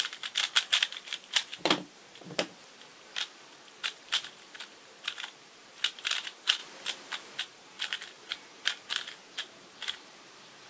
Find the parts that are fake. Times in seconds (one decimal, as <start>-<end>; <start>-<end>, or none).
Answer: 0.0-6.6; 7.4-8.9; 9.4-10.7